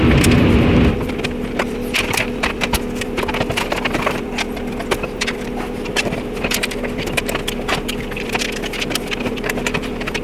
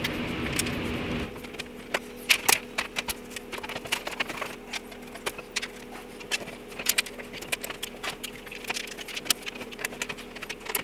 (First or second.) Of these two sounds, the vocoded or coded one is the first